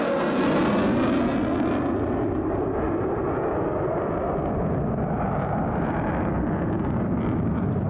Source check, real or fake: real